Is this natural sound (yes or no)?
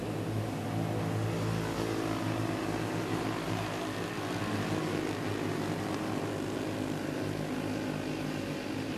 yes